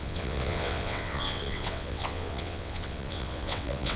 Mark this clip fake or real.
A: fake